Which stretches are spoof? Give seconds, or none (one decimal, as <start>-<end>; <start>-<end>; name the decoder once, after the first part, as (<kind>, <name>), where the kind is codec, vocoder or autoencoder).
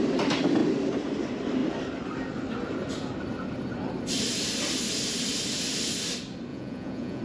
6.5-7.2 (vocoder, Vocos)